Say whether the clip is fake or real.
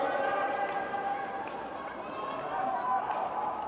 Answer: real